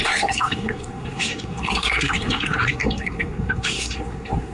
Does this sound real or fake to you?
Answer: fake